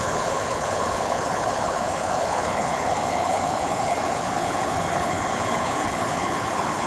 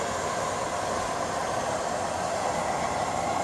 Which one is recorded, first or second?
second